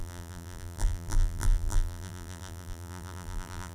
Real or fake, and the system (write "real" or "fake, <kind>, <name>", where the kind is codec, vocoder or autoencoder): fake, vocoder, BigVGAN v2